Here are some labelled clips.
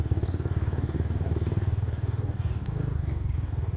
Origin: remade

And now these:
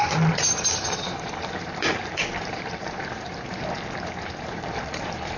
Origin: remade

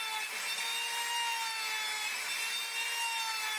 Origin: recorded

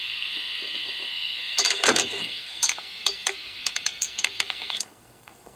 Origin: remade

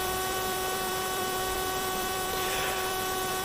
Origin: remade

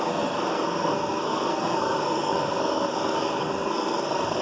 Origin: remade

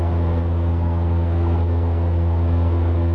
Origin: remade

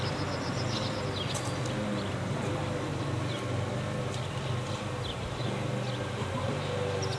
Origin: recorded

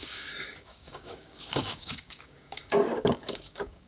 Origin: remade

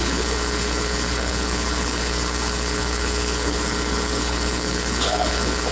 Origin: remade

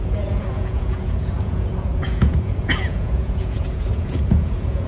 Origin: remade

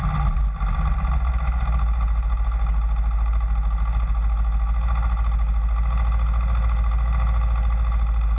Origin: recorded